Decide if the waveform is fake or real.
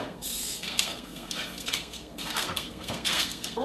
fake